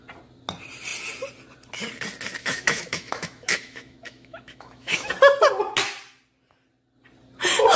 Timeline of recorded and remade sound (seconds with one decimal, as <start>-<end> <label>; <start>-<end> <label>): 0.0-2.4 recorded; 2.4-5.1 remade; 5.1-7.8 recorded